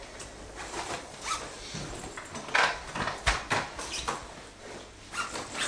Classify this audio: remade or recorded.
recorded